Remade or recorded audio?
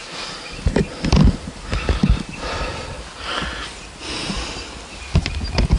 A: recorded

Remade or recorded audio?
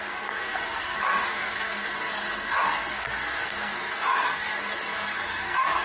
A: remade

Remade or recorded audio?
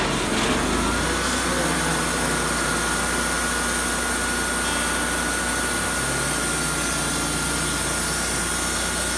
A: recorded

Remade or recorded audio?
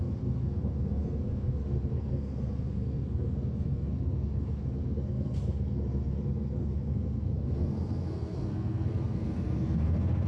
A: remade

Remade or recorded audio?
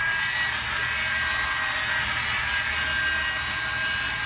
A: recorded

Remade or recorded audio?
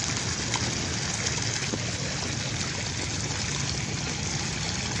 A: recorded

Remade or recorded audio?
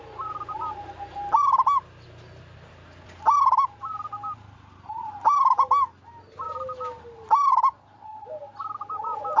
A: recorded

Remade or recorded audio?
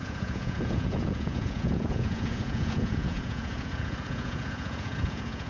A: remade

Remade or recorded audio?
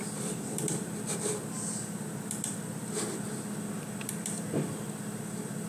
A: remade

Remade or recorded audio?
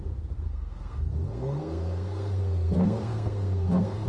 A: remade